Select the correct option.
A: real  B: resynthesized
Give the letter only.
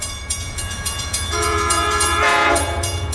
B